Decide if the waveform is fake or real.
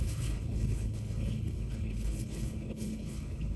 fake